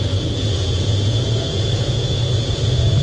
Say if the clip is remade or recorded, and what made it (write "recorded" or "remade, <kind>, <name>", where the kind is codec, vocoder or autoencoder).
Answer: remade, vocoder, Vocos